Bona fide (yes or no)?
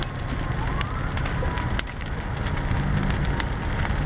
yes